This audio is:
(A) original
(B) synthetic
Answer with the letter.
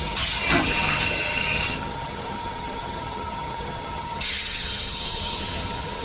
B